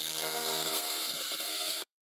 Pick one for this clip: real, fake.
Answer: fake